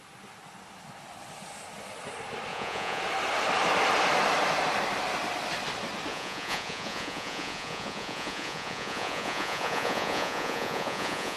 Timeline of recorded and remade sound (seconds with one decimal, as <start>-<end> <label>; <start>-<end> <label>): 0.0-2.5 recorded; 2.5-3.0 remade; 3.0-6.1 recorded; 6.1-11.4 remade